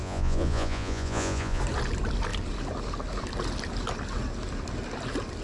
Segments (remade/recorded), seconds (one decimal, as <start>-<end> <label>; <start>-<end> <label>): 0.0-1.6 remade; 1.6-5.4 recorded